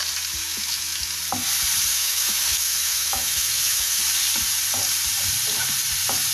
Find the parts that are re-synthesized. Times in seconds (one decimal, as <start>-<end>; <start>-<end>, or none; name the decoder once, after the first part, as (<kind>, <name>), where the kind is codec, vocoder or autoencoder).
0.4-1.1 (autoencoder, DAC-VAE); 1.9-4.0